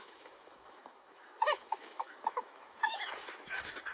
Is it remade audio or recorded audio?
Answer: remade